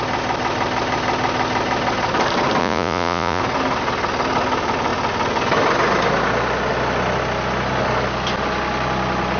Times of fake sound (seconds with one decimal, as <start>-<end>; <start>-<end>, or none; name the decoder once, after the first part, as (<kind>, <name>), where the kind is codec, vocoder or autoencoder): 2.6-3.4 (vocoder, Vocos)